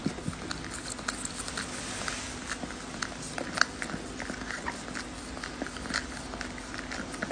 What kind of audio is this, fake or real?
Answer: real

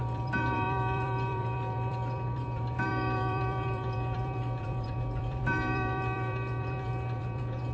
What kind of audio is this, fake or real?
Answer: fake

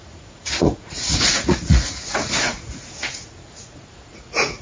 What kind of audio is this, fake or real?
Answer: fake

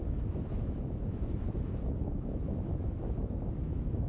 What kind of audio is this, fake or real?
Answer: fake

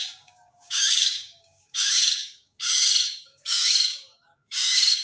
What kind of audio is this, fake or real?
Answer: fake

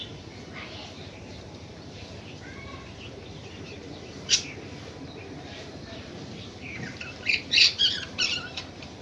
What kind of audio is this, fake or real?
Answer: fake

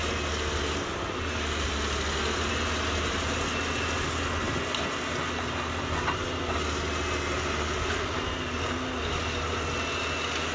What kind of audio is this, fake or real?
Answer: real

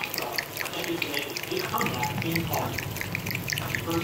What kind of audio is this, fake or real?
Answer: real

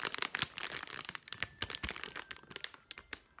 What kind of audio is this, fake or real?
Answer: real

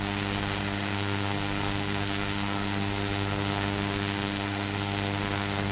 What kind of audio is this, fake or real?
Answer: fake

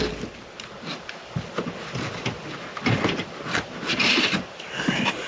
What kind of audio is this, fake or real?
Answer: fake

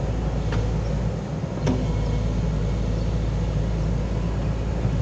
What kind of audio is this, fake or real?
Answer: real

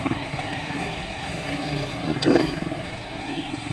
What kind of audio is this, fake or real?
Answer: fake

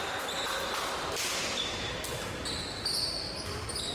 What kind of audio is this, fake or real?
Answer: real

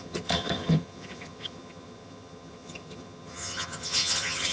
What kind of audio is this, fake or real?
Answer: fake